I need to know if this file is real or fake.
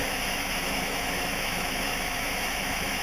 fake